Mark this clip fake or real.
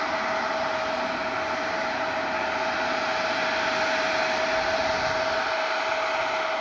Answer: real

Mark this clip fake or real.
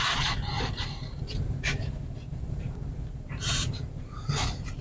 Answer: fake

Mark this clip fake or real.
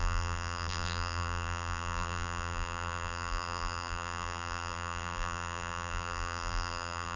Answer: fake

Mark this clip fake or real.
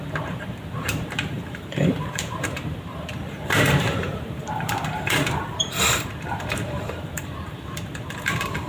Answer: fake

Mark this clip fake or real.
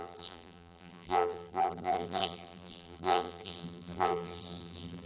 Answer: fake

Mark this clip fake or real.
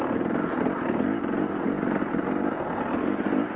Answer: real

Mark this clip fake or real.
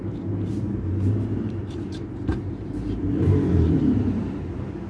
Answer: fake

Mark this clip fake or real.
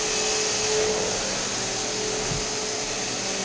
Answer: real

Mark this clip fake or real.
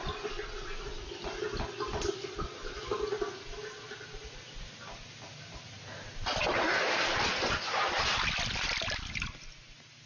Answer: real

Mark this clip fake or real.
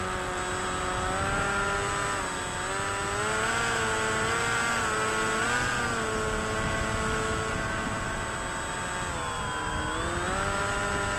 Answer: real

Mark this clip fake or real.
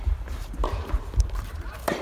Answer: fake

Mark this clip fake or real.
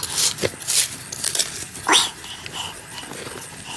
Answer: real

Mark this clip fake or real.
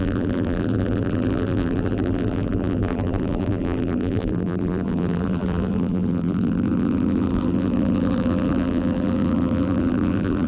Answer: fake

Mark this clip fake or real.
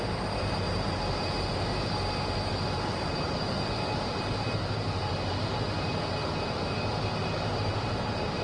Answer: fake